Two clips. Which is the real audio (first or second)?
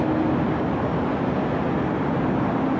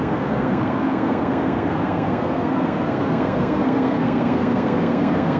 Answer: first